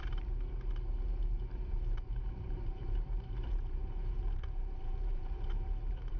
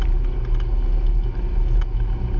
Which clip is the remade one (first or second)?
first